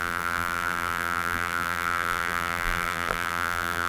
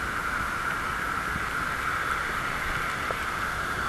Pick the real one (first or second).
second